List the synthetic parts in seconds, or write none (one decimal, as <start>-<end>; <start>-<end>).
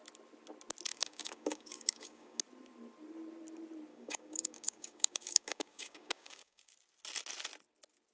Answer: 0.9-2.4; 3.9-6.7